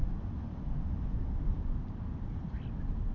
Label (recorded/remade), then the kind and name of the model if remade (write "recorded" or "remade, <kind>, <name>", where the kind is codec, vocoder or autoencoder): recorded